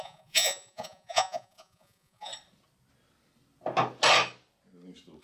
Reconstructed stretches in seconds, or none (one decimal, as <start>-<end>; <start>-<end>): 0.0-2.3